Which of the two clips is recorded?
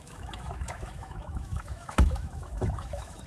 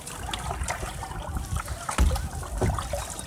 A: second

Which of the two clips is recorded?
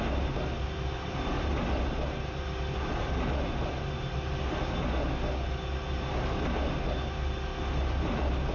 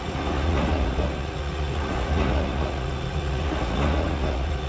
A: first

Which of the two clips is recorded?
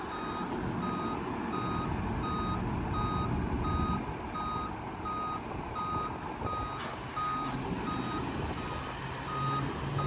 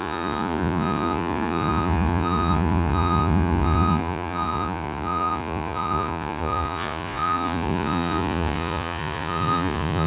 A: first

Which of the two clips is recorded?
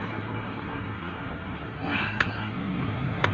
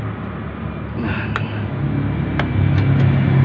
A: second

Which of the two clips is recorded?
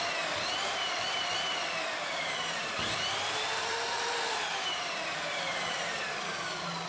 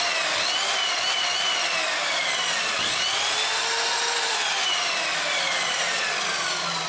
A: second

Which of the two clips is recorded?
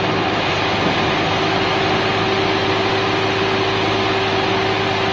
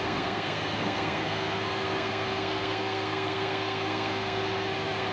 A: first